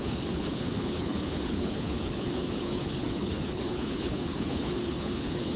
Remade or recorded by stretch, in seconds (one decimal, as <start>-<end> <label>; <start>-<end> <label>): 0.0-5.6 remade